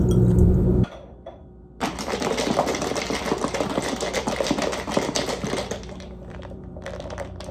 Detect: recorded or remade remade